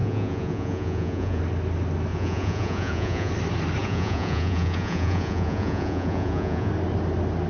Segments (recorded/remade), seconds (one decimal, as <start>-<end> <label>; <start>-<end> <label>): 0.0-1.4 remade; 1.4-2.1 recorded; 2.1-3.3 remade; 3.3-3.8 recorded; 3.8-6.7 remade; 6.7-7.5 recorded